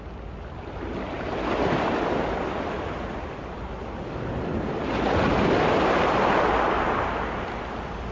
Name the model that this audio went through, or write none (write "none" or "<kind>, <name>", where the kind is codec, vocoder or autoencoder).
none